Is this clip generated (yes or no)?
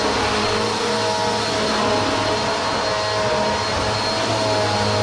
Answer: no